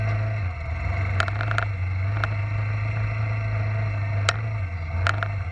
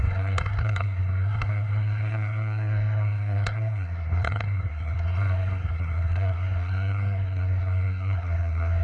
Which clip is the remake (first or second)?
second